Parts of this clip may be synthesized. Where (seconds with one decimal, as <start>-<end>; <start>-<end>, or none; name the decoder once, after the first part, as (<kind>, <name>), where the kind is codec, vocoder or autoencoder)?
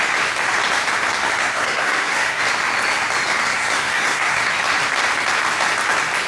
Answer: 1.4-2.4 (codec, SNAC); 3.4-4.5